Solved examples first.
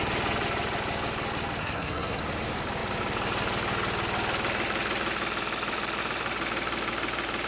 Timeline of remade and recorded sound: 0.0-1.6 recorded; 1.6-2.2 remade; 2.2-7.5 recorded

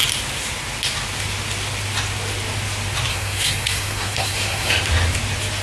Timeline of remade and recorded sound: 0.0-3.1 recorded; 3.1-4.7 remade; 4.7-5.6 recorded

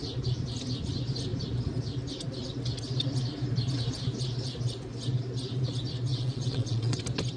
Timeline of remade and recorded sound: 0.0-6.1 recorded; 6.1-7.0 remade; 7.0-7.4 recorded

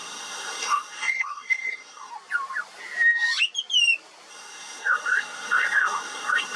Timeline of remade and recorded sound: 0.0-2.1 remade; 2.1-4.3 recorded; 4.3-6.6 remade

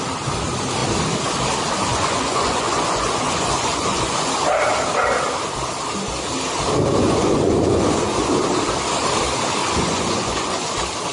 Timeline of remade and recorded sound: 0.0-1.9 recorded; 1.9-4.3 remade; 4.3-7.0 recorded; 7.0-8.3 remade; 8.3-9.6 recorded; 9.6-10.7 remade; 10.7-11.1 recorded

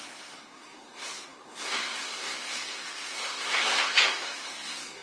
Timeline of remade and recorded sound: 0.0-5.0 remade

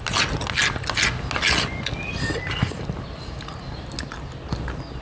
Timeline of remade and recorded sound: 0.0-5.0 recorded